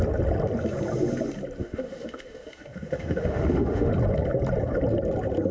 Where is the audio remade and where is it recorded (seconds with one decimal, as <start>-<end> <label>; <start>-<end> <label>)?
0.0-1.6 recorded; 1.6-3.9 remade; 3.9-5.5 recorded